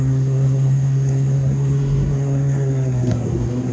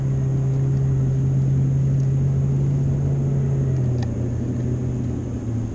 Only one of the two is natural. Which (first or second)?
second